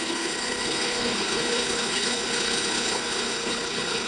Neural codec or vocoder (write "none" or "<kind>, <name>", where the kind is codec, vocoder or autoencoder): codec, HILCodec